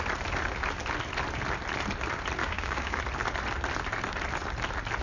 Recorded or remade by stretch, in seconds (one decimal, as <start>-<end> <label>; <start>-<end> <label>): 0.0-2.4 recorded; 2.4-3.0 remade; 3.0-5.0 recorded